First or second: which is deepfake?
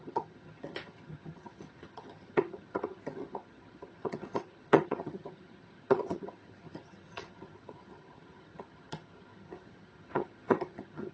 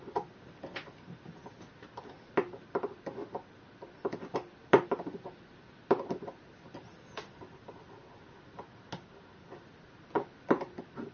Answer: first